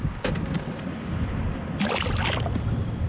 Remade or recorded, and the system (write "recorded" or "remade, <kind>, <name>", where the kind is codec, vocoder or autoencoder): recorded